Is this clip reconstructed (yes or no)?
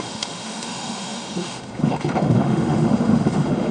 yes